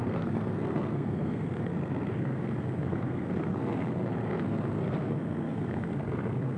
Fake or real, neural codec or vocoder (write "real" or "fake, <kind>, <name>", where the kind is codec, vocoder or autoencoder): fake, codec, SNAC